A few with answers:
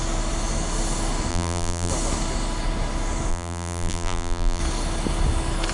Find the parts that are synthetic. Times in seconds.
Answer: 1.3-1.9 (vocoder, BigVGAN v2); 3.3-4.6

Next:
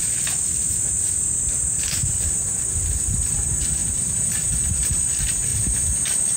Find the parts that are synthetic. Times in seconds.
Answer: 2.1-3.8 (vocoder, BigVGAN v2); 4.6-5.5

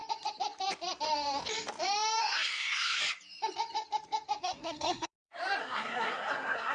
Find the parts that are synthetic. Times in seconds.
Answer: 2.2-3.0 (codec, SNAC); 4.4-5.1; 5.6-6.7